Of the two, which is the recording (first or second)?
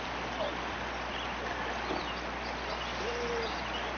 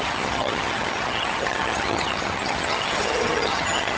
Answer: first